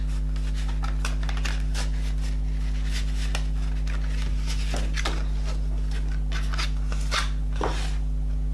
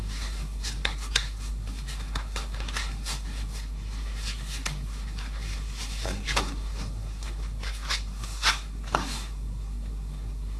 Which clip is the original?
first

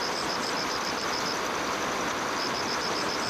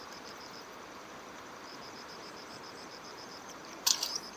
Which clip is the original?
first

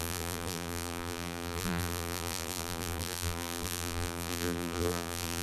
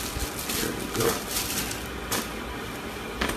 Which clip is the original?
second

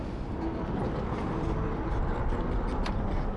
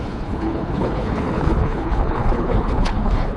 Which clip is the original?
first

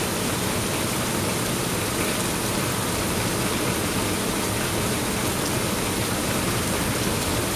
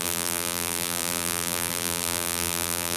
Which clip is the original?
first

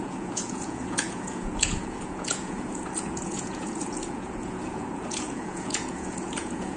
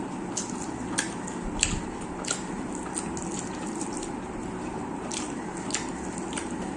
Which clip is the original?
second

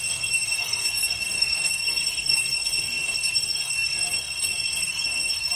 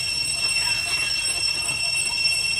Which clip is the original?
second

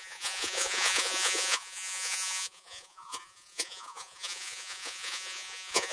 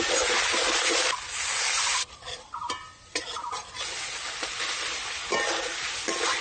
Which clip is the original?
second